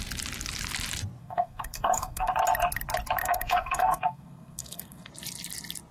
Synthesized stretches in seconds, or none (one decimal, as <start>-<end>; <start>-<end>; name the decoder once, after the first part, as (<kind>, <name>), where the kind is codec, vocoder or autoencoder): 1.2-2.3 (codec, SNAC); 3.2-5.1